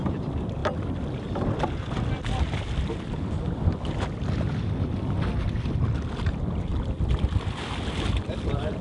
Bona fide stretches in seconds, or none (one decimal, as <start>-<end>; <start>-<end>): 0.0-8.8